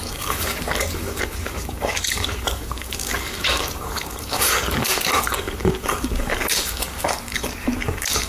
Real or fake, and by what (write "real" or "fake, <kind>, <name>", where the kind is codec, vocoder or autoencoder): fake, codec, DAC